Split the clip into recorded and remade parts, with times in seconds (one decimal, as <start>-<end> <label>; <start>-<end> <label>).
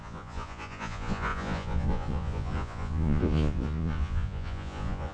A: 0.0-5.1 remade